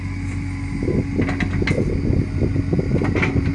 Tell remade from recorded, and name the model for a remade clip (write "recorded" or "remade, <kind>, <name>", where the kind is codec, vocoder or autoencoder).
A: recorded